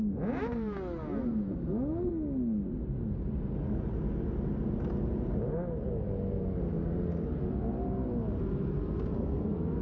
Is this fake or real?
real